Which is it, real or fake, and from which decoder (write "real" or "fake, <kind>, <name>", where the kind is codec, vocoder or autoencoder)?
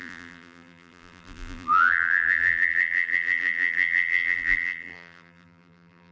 fake, vocoder, BigVGAN v2